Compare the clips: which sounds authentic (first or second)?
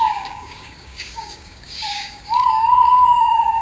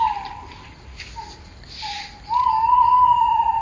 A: second